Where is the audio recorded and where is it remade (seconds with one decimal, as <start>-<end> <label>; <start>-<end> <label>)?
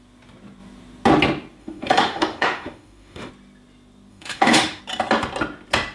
0.0-1.6 recorded; 1.6-3.3 remade; 3.3-4.1 recorded; 4.1-4.8 remade; 4.8-5.9 recorded